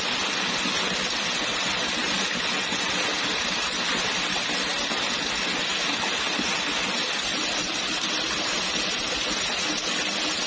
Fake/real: real